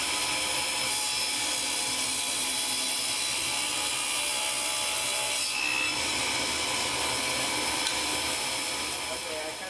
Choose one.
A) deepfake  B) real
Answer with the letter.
B